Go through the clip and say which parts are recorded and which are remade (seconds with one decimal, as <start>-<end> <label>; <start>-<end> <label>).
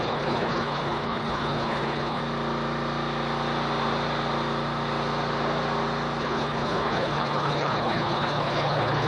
0.0-2.2 remade; 2.2-6.2 recorded; 6.2-9.1 remade